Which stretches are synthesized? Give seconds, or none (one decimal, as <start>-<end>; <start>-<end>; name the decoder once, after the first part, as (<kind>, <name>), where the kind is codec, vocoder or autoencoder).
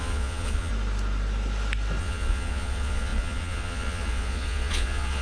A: 0.0-0.7 (vocoder, Vocos); 2.0-5.2